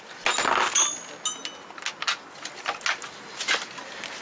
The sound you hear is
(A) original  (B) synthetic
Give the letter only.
A